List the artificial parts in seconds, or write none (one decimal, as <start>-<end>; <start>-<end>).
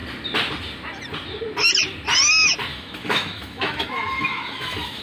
2.7-5.0